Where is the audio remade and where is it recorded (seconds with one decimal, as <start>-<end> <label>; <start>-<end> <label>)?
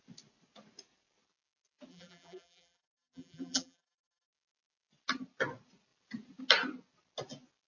0.0-1.9 recorded; 1.9-4.3 remade; 4.3-7.7 recorded